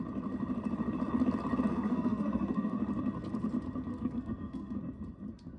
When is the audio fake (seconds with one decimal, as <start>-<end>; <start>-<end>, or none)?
1.7-2.8; 3.9-4.8